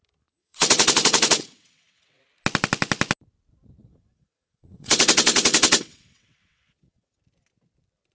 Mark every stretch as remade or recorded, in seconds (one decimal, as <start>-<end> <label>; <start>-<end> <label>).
0.0-0.4 recorded; 0.4-2.2 remade; 2.2-3.8 recorded; 3.8-7.2 remade; 7.2-8.1 recorded